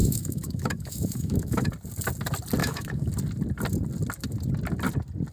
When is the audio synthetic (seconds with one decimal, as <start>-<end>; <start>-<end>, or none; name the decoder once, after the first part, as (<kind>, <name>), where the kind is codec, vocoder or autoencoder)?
0.0-1.7 (autoencoder, DAC-VAE); 2.6-3.1